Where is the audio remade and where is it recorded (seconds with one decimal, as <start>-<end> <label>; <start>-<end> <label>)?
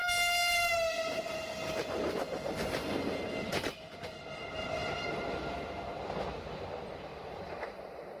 0.0-2.1 remade; 2.1-7.1 recorded; 7.1-8.2 remade